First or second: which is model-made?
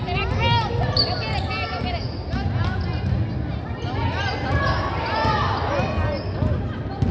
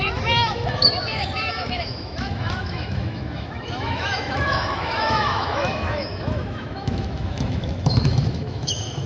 second